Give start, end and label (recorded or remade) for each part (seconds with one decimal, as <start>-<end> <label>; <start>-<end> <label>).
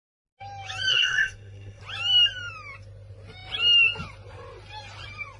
0.0-0.9 recorded; 0.9-1.8 remade; 1.8-5.4 recorded